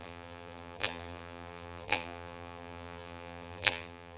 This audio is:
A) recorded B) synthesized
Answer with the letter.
B